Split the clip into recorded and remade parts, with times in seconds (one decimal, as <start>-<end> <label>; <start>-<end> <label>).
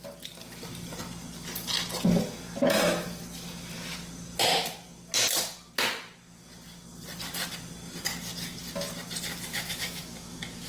0.0-9.5 recorded; 9.5-10.7 remade